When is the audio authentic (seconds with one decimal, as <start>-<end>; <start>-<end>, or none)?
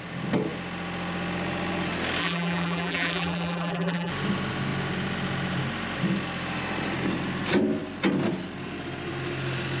0.0-2.2; 4.1-9.8